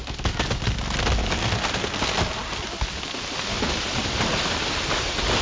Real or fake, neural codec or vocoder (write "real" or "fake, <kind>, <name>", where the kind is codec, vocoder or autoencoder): real